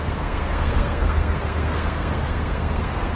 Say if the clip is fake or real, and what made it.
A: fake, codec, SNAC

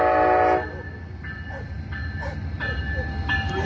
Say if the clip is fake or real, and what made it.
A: real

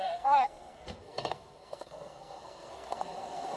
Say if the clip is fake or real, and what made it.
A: fake, codec, SNAC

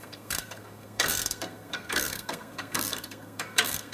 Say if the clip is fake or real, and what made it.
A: fake, codec, SNAC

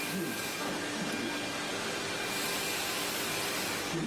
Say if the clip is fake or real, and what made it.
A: real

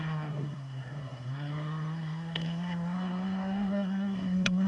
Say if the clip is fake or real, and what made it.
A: fake, codec, SNAC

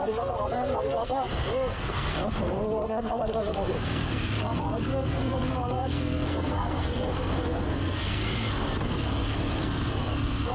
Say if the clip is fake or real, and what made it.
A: fake, codec, SNAC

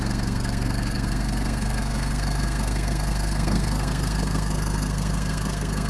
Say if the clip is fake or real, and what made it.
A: fake, codec, SNAC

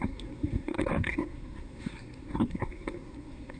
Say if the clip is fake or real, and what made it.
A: fake, codec, SNAC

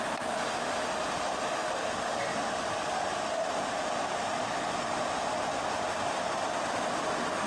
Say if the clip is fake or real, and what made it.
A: real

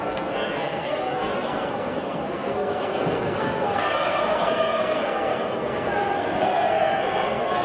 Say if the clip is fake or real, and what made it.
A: fake, codec, SNAC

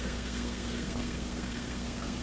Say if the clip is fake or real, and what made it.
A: fake, codec, SNAC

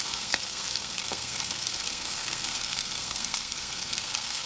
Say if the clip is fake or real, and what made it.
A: fake, codec, SNAC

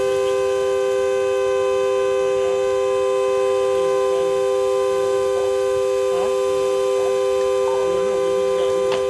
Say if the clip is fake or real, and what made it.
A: real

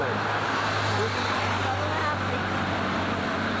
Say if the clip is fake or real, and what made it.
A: real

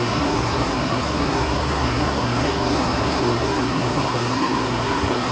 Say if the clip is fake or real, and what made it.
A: fake, codec, SNAC